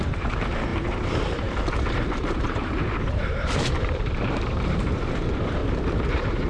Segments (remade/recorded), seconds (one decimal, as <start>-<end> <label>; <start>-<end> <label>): 0.0-5.6 remade; 5.6-6.1 recorded; 6.1-6.5 remade